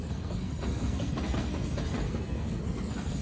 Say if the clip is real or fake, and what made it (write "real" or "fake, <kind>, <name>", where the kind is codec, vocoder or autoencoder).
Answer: fake, codec, SNAC